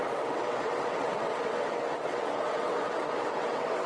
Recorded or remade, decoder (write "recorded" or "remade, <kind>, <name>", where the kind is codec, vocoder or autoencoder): remade, vocoder, WaveNeXt